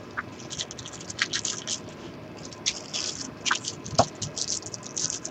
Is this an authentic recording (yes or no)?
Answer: yes